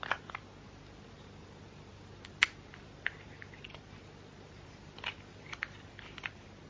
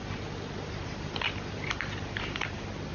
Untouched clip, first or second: first